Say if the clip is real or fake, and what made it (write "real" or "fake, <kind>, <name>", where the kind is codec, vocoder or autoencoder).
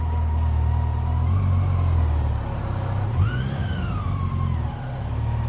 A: real